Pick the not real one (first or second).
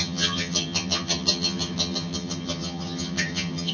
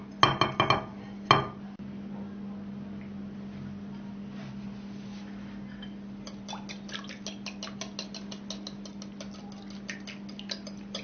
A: first